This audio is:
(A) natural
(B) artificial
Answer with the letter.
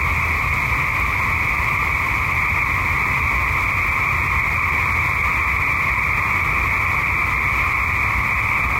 A